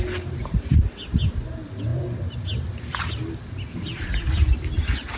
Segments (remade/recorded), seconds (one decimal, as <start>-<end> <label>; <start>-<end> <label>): 0.0-5.2 recorded

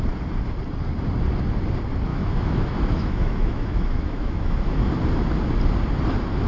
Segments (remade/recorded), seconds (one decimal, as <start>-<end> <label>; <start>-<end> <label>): 0.0-2.1 recorded; 2.1-4.7 remade; 4.7-6.5 recorded

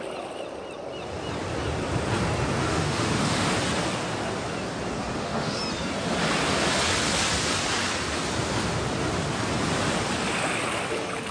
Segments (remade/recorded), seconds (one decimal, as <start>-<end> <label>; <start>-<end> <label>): 0.0-2.7 recorded; 2.7-3.5 remade; 3.5-5.0 recorded; 5.0-5.6 remade; 5.6-11.3 recorded

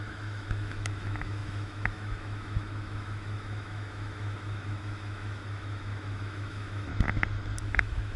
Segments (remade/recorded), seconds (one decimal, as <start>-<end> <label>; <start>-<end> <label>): 0.0-6.9 remade; 6.9-7.6 recorded; 7.6-8.2 remade

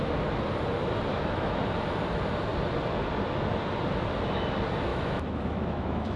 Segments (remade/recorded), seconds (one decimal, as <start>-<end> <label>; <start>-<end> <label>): 0.0-1.1 recorded; 1.1-1.6 remade; 1.6-4.9 recorded; 4.9-6.2 remade

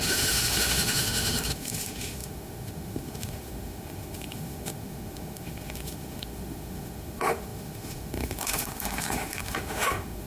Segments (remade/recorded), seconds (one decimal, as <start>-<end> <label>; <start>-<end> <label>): 0.0-10.3 remade

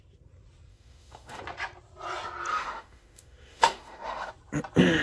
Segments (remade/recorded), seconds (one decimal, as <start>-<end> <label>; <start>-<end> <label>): 0.0-0.7 recorded; 0.7-1.4 remade; 1.4-2.5 recorded; 2.5-4.3 remade; 4.3-5.0 recorded

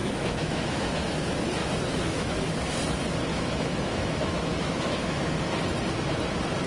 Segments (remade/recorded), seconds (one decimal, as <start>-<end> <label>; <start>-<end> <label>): 0.0-1.2 remade; 1.2-1.6 recorded; 1.6-2.3 remade; 2.3-3.3 recorded; 3.3-5.6 remade; 5.6-6.7 recorded